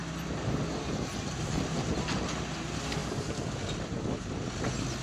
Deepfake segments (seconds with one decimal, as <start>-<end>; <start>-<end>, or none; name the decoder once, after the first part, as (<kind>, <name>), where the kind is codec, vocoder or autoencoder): 3.0-4.5 (vocoder, BigVGAN v2)